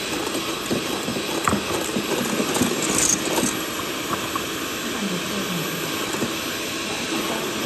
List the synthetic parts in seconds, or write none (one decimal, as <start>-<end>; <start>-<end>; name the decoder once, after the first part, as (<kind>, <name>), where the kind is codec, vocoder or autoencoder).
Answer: none